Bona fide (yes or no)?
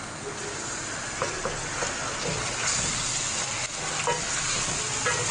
yes